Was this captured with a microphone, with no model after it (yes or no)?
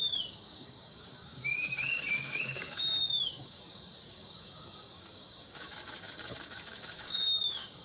no